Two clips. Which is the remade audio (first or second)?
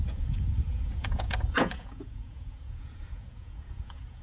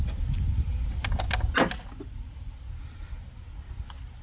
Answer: first